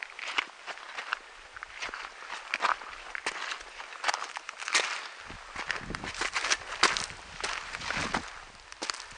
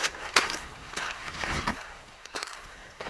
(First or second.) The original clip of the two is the first